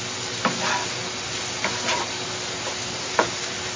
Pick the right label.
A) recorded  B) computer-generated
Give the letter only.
A